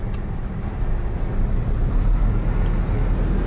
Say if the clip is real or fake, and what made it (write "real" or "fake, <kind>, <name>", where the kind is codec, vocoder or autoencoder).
real